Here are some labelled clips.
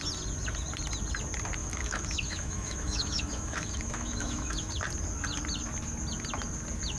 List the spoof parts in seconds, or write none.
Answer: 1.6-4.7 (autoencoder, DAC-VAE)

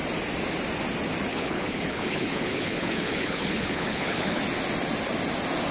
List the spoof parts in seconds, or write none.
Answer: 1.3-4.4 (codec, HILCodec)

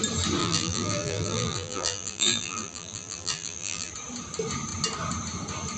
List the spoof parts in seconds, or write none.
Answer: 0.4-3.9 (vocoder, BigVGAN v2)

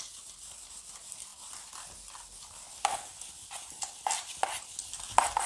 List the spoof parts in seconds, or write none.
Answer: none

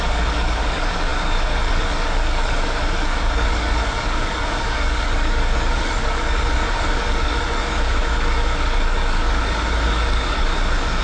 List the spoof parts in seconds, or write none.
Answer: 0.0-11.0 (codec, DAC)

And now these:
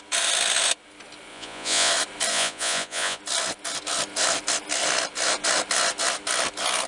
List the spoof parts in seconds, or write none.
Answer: 1.3-1.9 (vocoder, Vocos); 2.3-3.2